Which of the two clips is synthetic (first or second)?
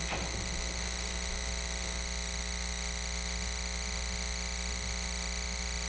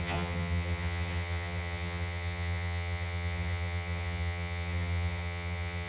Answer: second